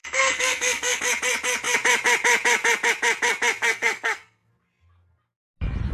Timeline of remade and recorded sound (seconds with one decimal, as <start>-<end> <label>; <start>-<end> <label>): 0.0-1.0 remade; 1.0-3.6 recorded; 3.6-4.5 remade; 4.5-5.9 recorded